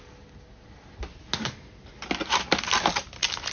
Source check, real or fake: real